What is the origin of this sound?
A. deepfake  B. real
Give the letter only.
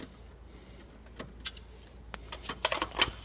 B